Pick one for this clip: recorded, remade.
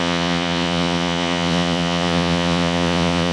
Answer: remade